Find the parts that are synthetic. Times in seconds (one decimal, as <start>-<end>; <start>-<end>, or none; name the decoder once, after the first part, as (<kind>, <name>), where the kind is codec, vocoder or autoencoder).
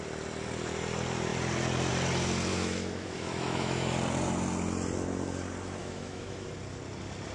2.5-3.9 (autoencoder, DAC-VAE); 5.8-6.5